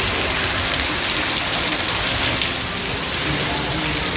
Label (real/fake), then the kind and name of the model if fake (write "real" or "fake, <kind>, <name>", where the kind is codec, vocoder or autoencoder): real